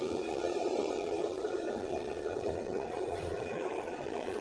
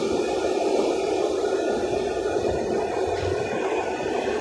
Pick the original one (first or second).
second